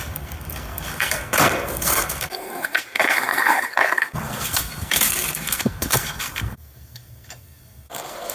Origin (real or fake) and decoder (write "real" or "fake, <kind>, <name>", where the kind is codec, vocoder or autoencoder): fake, codec, SNAC